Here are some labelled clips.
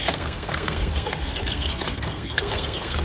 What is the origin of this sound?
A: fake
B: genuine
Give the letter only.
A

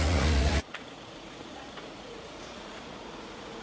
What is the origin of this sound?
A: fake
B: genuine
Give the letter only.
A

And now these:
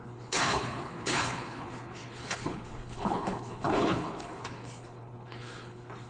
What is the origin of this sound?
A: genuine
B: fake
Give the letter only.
B